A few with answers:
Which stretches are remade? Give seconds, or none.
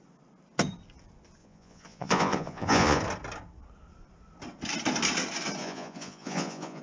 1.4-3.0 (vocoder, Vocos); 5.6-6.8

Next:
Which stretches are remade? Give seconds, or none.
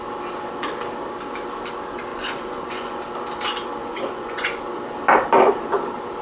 2.1-3.0 (vocoder, Vocos); 3.8-4.6